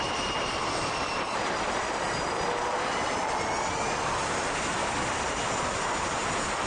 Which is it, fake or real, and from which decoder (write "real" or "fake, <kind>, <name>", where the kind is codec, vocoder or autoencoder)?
real